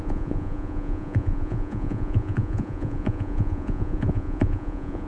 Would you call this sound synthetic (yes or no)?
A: yes